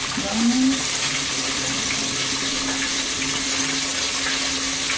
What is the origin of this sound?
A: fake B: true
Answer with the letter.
B